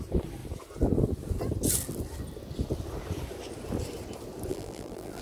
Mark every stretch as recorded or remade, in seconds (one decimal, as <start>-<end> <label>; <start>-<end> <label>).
0.0-4.5 recorded; 4.5-5.2 remade